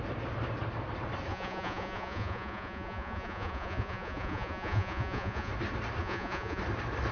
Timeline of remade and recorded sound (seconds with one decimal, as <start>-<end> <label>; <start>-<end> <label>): 0.0-1.3 recorded; 1.3-5.5 remade; 5.5-6.0 recorded; 6.0-6.6 remade; 6.6-7.1 recorded